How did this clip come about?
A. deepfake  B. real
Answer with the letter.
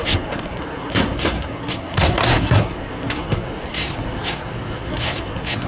A